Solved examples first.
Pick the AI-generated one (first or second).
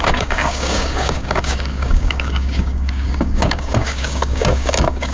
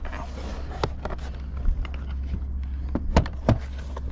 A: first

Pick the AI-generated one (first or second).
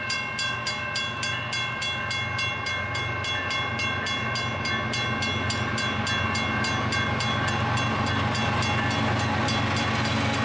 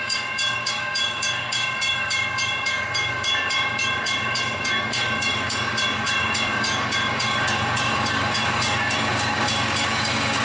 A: second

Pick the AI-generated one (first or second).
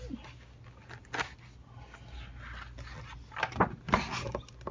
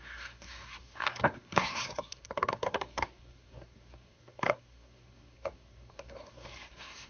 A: second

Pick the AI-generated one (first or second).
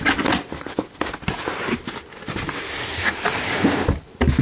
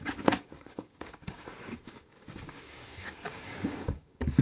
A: second